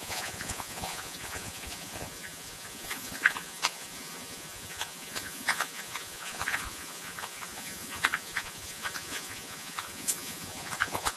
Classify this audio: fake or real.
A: fake